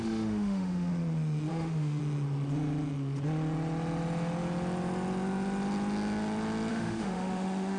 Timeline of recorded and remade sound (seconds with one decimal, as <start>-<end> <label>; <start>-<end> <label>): 0.0-0.9 remade; 0.9-1.5 recorded; 1.5-2.0 remade; 2.0-6.7 recorded; 6.7-7.8 remade